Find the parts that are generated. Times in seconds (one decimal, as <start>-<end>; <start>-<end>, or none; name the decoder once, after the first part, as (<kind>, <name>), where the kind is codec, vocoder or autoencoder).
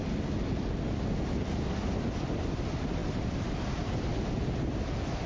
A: none